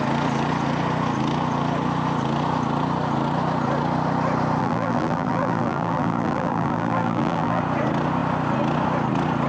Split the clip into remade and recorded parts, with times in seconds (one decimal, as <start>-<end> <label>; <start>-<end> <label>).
0.0-4.6 recorded; 4.6-7.6 remade; 7.6-9.5 recorded